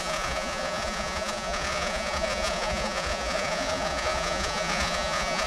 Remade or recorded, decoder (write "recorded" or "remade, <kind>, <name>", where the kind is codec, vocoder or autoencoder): remade, vocoder, Vocos